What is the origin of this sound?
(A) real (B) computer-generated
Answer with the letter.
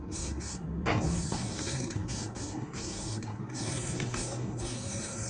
B